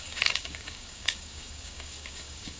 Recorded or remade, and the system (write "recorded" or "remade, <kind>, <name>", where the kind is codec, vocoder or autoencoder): remade, codec, DAC